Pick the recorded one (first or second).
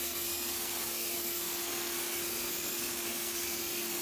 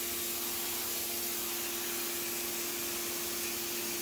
second